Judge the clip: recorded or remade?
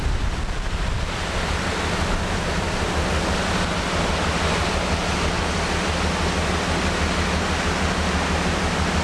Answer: recorded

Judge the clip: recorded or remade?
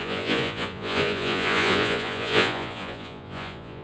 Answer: remade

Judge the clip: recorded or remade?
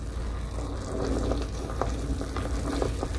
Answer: recorded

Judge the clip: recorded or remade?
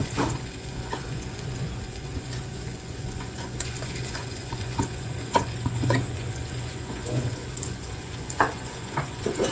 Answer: remade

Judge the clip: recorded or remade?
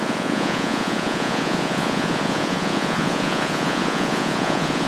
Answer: remade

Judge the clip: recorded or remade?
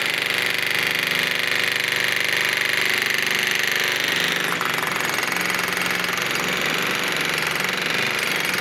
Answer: recorded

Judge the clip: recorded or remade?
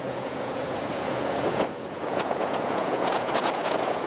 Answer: remade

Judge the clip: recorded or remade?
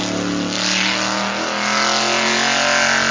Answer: recorded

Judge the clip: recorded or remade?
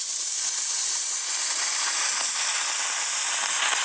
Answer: recorded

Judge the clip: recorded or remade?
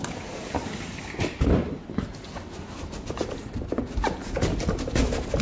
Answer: recorded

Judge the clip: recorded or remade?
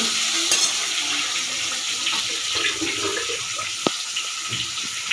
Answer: recorded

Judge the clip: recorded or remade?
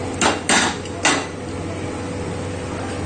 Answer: recorded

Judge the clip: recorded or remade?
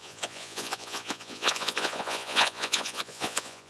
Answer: remade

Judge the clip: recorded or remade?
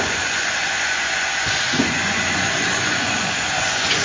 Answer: remade